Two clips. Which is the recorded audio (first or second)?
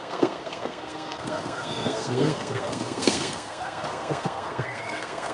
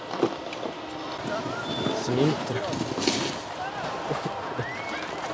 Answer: second